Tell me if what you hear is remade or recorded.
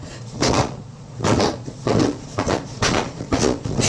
remade